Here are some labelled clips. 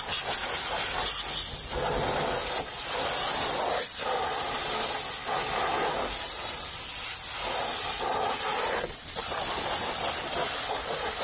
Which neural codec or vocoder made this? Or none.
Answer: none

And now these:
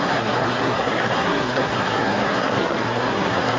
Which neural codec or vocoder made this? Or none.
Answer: codec, SNAC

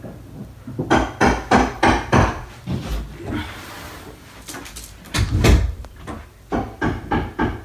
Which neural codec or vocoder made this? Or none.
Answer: none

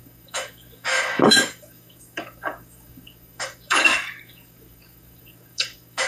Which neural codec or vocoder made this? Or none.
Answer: codec, DAC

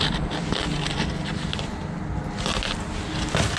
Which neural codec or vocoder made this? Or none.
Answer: none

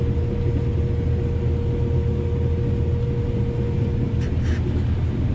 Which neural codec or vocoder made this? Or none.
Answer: none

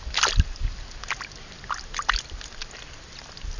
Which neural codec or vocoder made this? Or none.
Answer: none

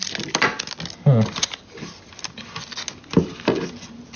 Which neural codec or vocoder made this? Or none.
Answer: none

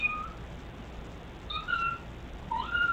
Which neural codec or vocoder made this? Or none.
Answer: none